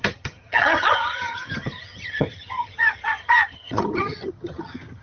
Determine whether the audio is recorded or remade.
remade